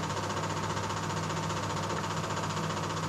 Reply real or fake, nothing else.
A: real